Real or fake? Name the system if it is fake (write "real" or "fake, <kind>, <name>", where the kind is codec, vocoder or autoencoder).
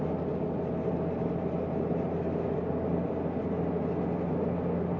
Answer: real